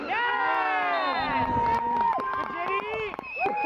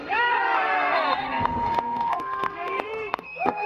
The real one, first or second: first